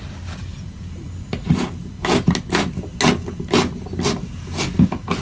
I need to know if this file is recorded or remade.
recorded